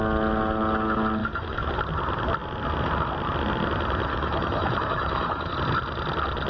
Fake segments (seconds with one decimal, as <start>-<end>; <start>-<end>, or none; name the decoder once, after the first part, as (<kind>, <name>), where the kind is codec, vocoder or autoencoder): 1.2-1.7 (autoencoder, DAC-VAE); 4.1-5.5